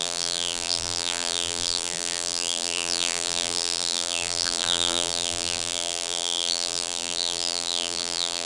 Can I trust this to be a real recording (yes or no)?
no